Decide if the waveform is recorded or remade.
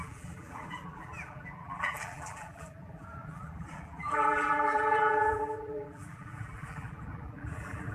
remade